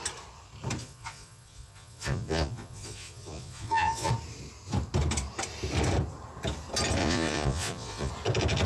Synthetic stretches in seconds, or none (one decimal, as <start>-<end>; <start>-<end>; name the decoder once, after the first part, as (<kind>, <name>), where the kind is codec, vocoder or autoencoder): 0.8-4.1 (vocoder, Vocos); 7.0-8.1